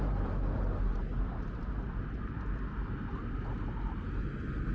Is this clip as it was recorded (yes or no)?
yes